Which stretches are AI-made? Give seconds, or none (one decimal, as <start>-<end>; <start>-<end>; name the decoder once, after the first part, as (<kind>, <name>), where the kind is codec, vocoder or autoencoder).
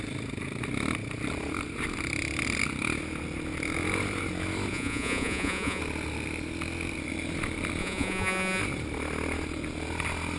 4.7-5.8 (vocoder, Vocos); 7.8-8.6